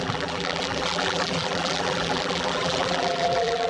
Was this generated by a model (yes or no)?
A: yes